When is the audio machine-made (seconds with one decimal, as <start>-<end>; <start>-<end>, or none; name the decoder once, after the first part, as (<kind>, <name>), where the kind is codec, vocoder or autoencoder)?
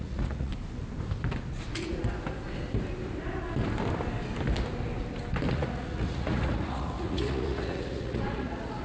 0.0-0.5 (vocoder, Vocos); 5.5-8.8